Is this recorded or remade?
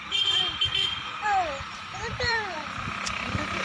remade